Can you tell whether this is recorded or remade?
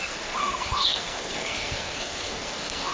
remade